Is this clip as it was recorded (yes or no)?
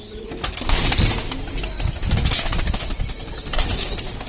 yes